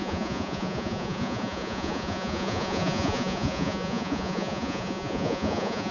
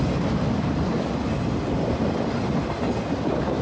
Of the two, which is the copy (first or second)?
first